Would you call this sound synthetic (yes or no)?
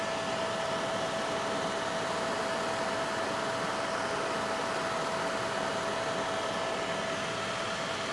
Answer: no